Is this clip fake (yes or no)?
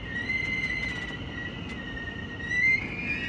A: no